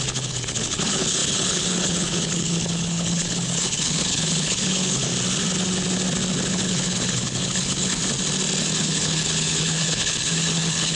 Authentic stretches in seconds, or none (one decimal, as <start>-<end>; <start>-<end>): 5.1-6.5; 8.0-8.8